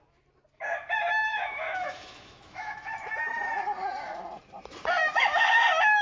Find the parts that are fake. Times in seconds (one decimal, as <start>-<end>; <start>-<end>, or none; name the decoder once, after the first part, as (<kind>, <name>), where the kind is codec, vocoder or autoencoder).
1.1-2.9 (autoencoder, DAC-VAE); 5.0-5.6